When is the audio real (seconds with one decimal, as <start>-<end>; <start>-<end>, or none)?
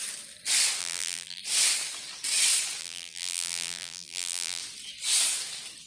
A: 0.0-0.8; 1.4-2.8; 4.6-5.9